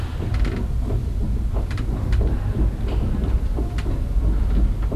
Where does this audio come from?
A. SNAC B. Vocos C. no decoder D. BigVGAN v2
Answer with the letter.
C